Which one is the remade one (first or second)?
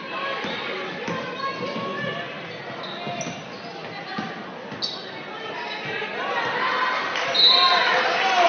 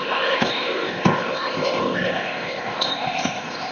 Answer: second